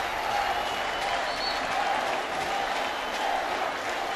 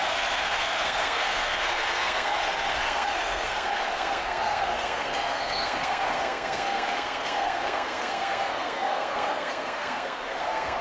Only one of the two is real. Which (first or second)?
first